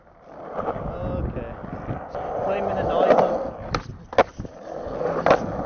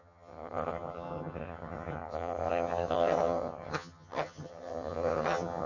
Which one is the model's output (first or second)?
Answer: second